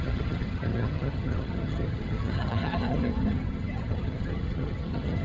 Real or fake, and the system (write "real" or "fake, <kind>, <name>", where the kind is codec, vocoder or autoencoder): fake, vocoder, HiFi-GAN